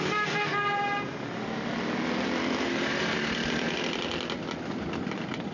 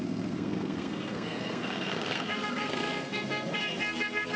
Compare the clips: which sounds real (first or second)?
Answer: first